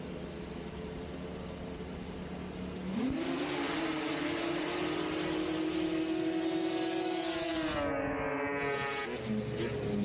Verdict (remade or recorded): recorded